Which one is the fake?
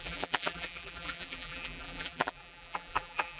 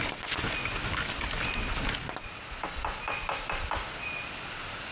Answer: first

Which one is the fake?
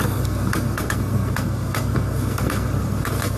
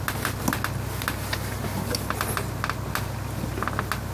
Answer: first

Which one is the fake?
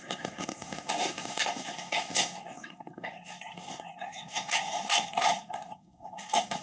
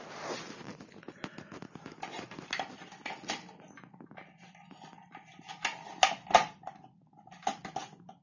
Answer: first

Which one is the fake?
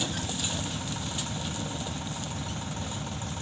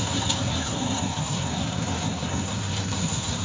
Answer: second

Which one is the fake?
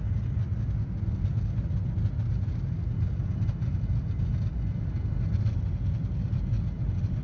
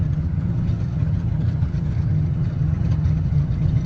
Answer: second